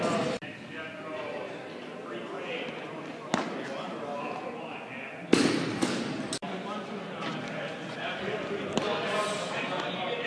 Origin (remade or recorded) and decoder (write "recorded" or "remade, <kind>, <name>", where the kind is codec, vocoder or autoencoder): recorded